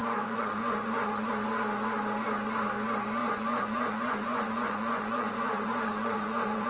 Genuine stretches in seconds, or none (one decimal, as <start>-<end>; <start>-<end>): 1.3-3.2